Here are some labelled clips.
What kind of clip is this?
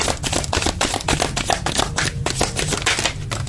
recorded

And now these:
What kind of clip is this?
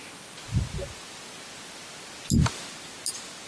recorded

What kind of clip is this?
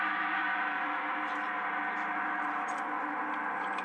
remade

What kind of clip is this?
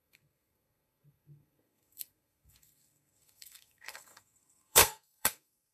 remade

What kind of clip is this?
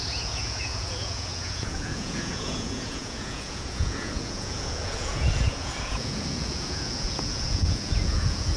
remade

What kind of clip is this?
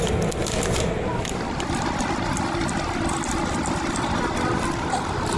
recorded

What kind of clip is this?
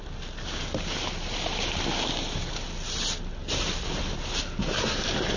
recorded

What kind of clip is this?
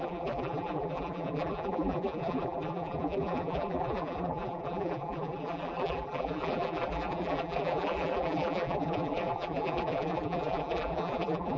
remade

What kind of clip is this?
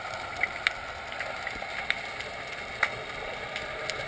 recorded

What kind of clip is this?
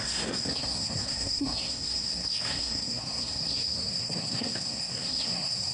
remade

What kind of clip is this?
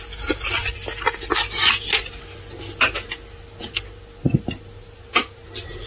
recorded